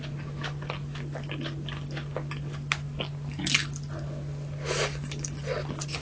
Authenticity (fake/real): real